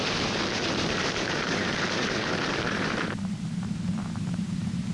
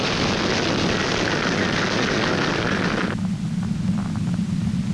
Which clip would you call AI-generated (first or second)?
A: first